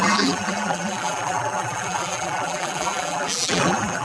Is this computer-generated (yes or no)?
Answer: yes